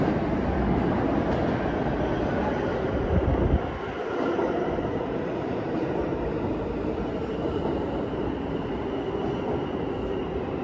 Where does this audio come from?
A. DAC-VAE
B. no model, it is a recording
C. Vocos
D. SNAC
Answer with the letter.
B